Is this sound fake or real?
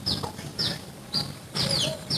fake